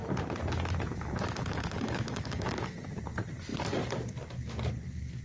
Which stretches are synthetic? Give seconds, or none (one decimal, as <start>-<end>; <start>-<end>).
0.9-3.0

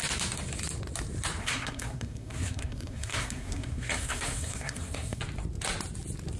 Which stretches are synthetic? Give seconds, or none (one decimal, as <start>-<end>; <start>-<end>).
1.4-5.2

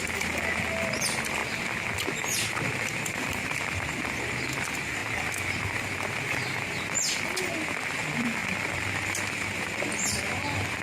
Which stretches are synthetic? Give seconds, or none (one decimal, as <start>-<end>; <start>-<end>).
0.0-1.4; 2.6-5.0; 7.4-10.8